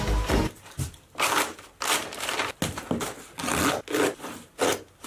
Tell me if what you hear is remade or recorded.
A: recorded